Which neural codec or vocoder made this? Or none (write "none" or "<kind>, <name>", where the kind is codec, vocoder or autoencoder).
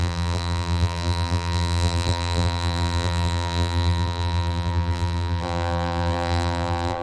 vocoder, BigVGAN v2